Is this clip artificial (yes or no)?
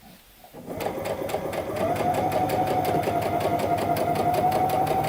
no